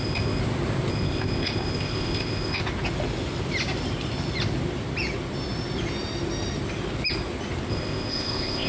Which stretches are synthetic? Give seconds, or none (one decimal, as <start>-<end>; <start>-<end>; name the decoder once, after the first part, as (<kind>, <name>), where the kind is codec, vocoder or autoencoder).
0.0-0.4 (codec, ZipCodec); 0.9-2.6; 7.7-8.7